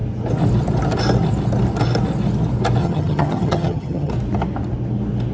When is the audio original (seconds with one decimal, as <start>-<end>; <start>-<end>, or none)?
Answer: 0.0-2.8; 4.1-5.3